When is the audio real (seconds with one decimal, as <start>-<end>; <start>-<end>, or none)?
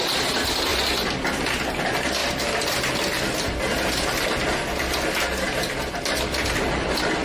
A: 0.7-1.8; 2.2-6.2